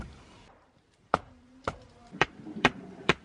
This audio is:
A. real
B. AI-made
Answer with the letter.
B